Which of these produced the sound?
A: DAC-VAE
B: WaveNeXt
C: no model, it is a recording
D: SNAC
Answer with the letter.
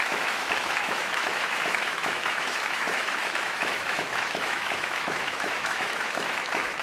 A